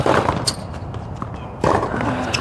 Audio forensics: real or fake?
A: real